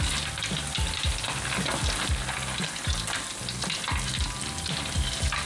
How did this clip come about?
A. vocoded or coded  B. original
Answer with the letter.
B